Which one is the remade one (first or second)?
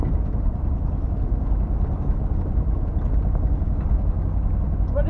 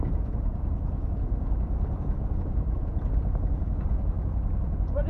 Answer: second